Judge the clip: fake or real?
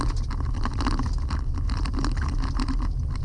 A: real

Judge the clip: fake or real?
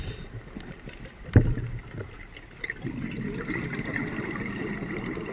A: fake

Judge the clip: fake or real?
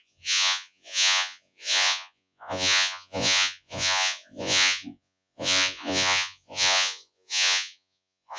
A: fake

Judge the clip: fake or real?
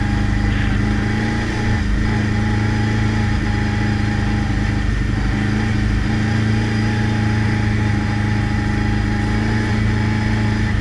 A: real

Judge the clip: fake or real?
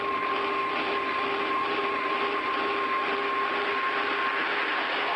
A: real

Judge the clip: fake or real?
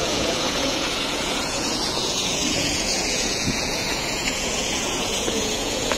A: fake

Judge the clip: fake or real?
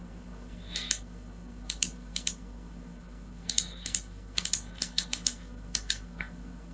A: fake